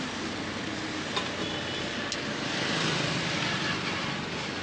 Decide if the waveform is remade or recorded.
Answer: recorded